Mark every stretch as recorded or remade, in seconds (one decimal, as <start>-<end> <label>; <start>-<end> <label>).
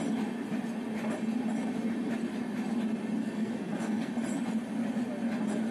0.0-3.2 recorded; 3.2-4.1 remade; 4.1-5.7 recorded